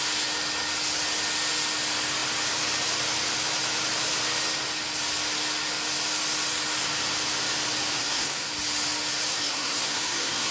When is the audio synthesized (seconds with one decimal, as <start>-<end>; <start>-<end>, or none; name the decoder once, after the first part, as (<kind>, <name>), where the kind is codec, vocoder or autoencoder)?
8.0-8.5 (codec, SNAC); 9.3-10.5